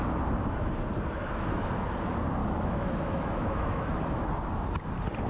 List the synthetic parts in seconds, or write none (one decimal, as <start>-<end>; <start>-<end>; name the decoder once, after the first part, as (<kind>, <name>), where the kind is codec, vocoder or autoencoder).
1.2-1.7 (autoencoder, DAC-VAE); 2.4-4.3